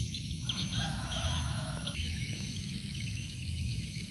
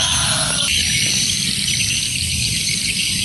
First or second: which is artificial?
first